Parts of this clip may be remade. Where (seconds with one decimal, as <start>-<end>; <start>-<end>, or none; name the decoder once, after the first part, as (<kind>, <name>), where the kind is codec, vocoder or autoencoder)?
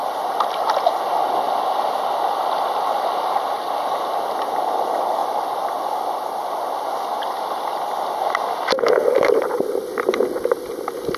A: none